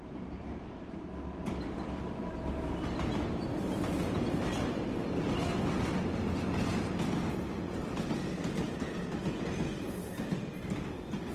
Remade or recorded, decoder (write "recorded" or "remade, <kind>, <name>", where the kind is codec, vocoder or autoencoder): recorded